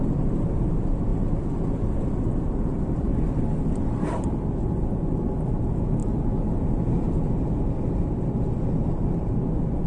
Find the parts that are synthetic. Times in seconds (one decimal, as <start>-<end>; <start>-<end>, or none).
none